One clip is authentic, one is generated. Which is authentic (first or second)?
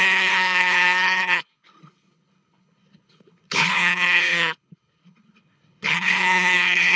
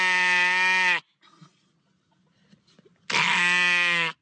second